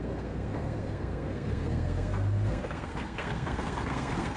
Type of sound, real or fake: fake